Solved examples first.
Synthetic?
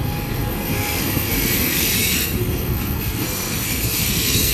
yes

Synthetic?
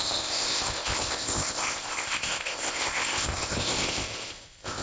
yes